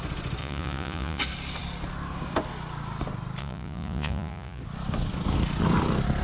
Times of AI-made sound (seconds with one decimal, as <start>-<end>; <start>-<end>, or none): 0.4-1.2; 3.4-4.6